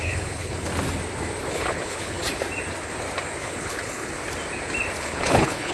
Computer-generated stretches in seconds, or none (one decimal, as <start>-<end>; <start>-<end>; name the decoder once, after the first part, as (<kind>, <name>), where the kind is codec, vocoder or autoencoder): 0.0-0.7 (codec, HILCodec); 1.5-2.2; 3.4-4.2; 5.0-5.7